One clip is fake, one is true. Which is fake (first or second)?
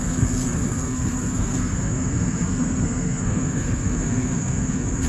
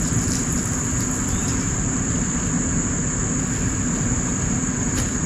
first